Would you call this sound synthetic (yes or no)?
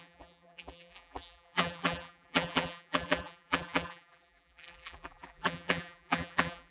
yes